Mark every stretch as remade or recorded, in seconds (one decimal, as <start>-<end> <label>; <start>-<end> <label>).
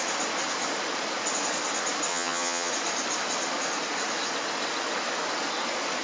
0.0-2.1 recorded; 2.1-2.7 remade; 2.7-6.0 recorded